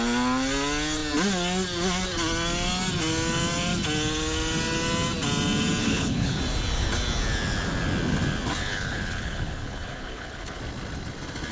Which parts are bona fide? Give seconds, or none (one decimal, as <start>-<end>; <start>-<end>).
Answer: 0.0-5.8; 6.4-8.6; 10.6-11.5